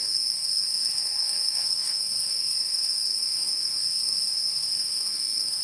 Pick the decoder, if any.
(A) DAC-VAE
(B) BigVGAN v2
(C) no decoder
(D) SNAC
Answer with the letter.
D